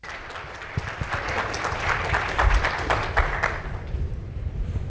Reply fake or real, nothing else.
real